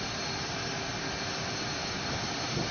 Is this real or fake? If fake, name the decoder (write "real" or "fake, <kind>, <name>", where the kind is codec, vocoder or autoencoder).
real